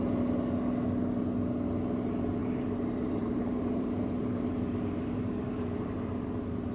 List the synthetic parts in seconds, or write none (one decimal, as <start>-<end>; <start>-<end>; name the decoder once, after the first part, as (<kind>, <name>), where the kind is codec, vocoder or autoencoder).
2.4-6.7 (vocoder, BigVGAN v2)